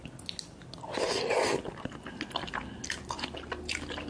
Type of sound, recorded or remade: recorded